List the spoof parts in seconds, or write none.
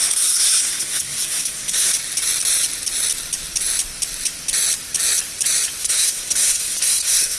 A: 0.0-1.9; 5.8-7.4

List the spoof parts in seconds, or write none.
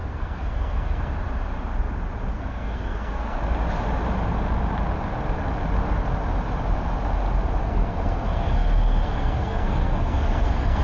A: 0.0-1.1; 2.3-3.4; 7.6-10.8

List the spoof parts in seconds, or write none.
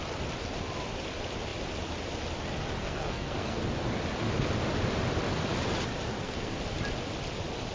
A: 2.8-3.6; 6.1-6.6